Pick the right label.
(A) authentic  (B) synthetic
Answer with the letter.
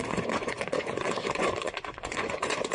B